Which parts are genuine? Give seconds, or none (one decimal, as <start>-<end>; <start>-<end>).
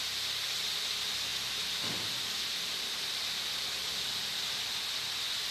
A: 0.0-5.5